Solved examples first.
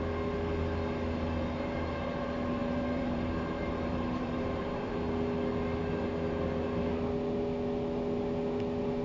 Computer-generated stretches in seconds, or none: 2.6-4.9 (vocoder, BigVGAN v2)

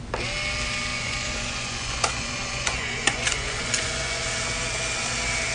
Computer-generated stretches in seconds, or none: 0.9-4.2 (vocoder, Vocos)

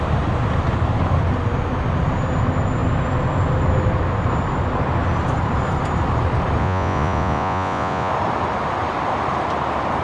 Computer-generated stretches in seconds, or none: 6.6-8.1 (vocoder, Vocos)